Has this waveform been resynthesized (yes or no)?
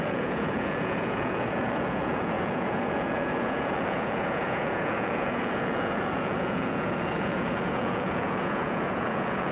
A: yes